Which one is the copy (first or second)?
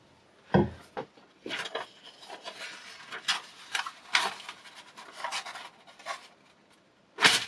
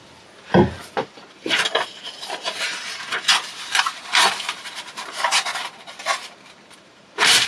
second